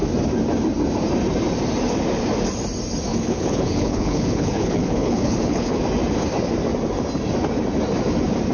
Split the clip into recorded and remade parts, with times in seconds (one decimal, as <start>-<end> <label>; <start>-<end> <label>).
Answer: 0.0-3.1 recorded; 3.1-5.8 remade; 5.8-8.5 recorded